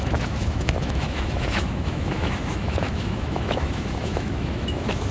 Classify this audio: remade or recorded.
remade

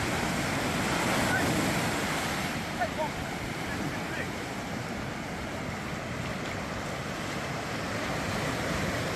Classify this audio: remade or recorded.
recorded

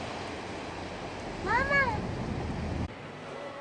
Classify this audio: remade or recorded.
recorded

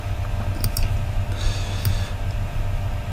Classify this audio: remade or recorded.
recorded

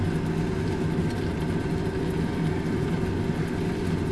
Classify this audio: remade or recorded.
recorded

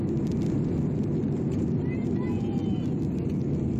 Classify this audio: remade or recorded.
remade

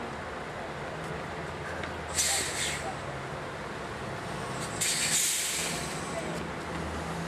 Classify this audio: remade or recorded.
recorded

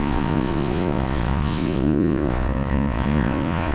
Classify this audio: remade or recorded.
remade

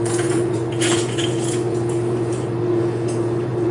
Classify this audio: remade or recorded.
remade